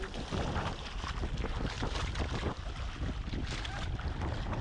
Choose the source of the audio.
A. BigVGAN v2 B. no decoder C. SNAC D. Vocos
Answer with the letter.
B